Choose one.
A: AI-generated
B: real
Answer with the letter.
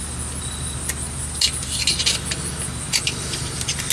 B